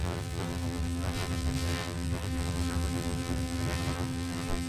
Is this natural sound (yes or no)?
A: no